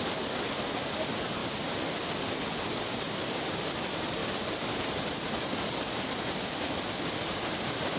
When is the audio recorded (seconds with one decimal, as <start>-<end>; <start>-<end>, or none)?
1.4-3.7; 4.2-7.3